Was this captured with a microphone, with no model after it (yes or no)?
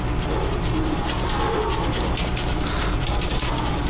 yes